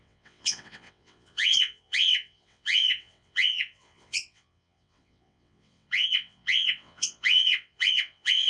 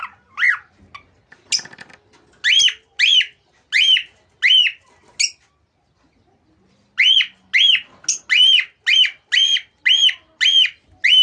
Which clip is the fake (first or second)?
first